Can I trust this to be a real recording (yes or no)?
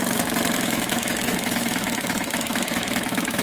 no